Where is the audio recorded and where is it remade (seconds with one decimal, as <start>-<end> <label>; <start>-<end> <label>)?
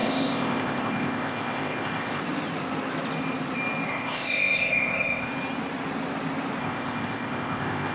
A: 0.0-2.2 remade; 2.2-3.9 recorded; 3.9-5.3 remade; 5.3-6.6 recorded; 6.6-7.9 remade